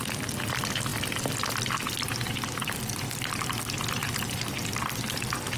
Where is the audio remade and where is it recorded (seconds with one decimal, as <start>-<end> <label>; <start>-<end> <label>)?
0.0-5.6 recorded